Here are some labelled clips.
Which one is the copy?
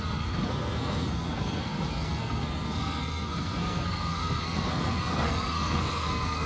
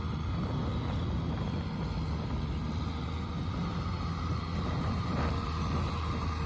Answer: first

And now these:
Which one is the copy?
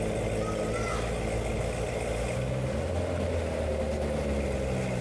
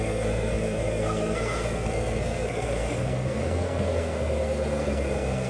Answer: second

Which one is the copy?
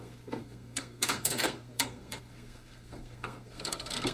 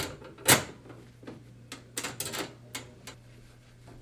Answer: first